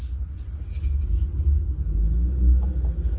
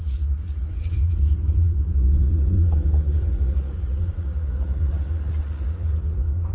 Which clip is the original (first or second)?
first